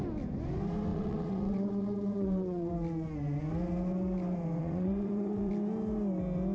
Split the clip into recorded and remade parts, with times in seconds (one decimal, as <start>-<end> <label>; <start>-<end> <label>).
0.0-0.9 recorded; 0.9-2.7 remade; 2.7-4.6 recorded; 4.6-5.5 remade; 5.5-6.5 recorded